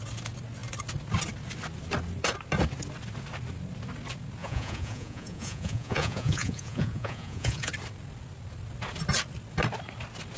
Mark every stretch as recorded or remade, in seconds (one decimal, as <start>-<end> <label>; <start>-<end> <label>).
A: 0.0-4.4 recorded; 4.4-7.7 remade; 7.7-10.4 recorded